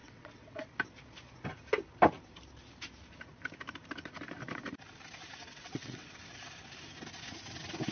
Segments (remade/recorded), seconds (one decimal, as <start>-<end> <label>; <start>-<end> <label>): 0.0-0.6 remade; 0.6-5.4 recorded; 5.4-6.2 remade; 6.2-7.9 recorded